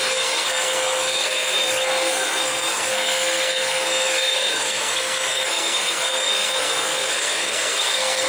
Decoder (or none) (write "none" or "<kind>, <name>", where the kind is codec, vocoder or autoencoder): codec, SNAC